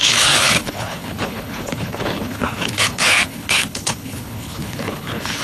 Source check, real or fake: fake